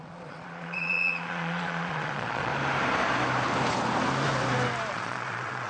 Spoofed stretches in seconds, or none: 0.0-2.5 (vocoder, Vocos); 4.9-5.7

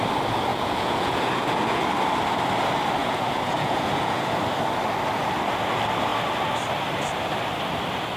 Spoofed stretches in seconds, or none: 0.5-1.8 (vocoder, Vocos); 3.0-4.2

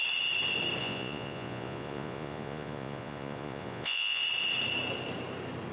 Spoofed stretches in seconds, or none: 0.8-4.2 (vocoder, Vocos)

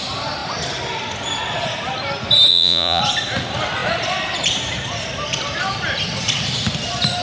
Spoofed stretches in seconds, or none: 2.5-3.0 (vocoder, Vocos)

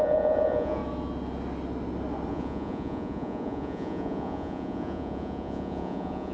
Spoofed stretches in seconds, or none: 0.0-0.8 (vocoder, Vocos); 2.3-6.3